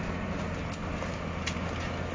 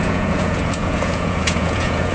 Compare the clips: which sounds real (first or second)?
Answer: first